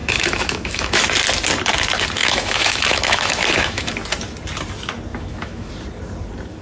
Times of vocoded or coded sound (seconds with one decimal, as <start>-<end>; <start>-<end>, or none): 0.0-1.0; 2.2-3.9; 5.1-5.7